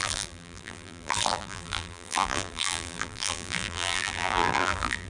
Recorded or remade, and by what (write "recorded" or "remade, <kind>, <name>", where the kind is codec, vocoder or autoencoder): remade, vocoder, BigVGAN v2